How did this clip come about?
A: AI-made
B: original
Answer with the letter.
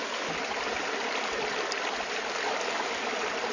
B